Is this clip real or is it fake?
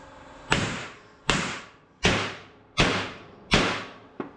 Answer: fake